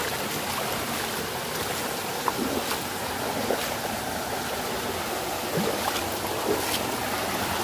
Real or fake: real